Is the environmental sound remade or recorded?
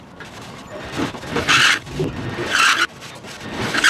recorded